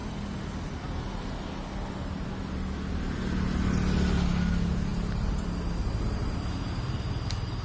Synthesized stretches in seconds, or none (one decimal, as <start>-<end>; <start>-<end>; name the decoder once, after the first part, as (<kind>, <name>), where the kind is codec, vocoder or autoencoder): none